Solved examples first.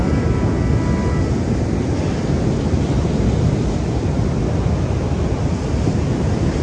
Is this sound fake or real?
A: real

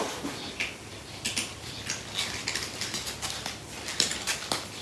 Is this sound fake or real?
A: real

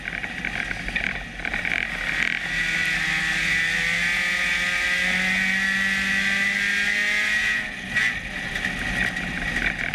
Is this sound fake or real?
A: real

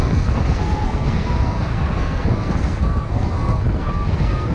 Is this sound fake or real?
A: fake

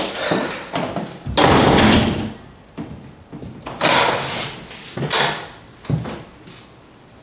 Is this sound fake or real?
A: real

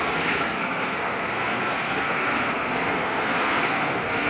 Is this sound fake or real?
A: fake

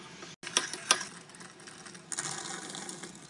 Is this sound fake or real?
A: real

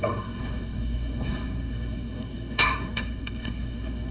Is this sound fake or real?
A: fake